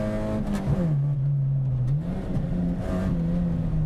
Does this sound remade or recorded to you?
recorded